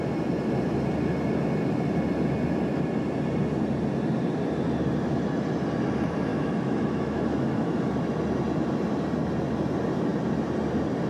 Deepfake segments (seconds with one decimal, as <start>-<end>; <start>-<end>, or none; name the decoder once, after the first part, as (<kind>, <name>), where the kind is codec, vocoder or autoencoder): 6.3-7.8 (autoencoder, DAC-VAE)

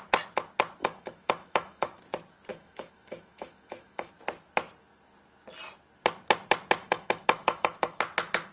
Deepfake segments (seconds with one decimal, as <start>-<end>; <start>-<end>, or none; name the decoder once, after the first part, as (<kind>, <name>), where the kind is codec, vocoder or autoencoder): 0.8-2.0 (autoencoder, DAC-VAE); 2.5-4.1; 6.8-8.0